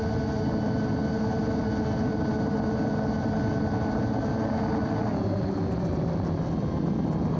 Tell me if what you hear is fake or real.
real